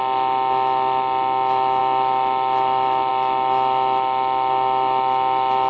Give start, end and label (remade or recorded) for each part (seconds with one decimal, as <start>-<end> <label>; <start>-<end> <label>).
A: 0.0-5.7 recorded